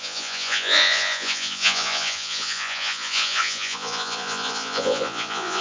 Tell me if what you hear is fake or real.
fake